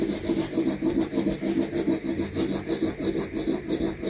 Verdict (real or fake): real